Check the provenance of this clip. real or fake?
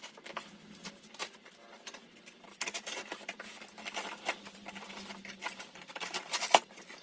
real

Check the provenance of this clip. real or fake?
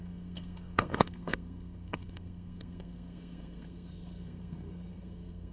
fake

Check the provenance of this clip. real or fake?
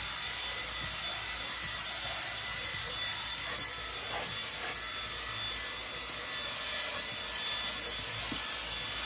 real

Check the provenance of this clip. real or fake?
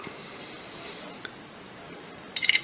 fake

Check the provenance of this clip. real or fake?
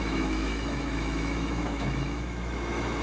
fake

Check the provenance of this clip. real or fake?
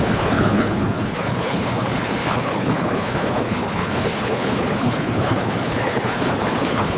fake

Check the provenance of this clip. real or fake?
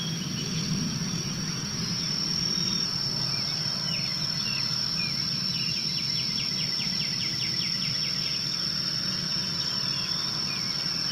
real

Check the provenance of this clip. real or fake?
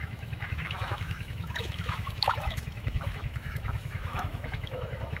fake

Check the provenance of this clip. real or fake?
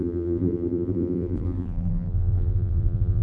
fake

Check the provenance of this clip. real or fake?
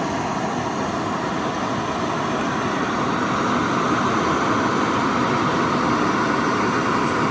real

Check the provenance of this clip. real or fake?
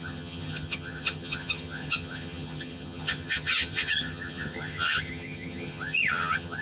fake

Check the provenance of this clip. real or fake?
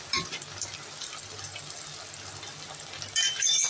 real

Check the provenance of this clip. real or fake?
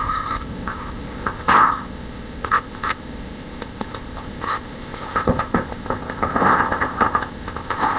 fake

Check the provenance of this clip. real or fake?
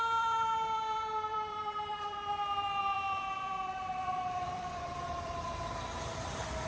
fake